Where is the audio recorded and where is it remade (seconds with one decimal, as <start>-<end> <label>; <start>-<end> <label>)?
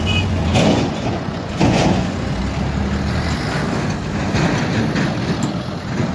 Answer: 0.0-2.4 remade; 2.4-6.1 recorded